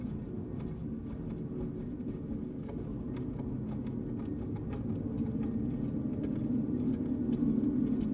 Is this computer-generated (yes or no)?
no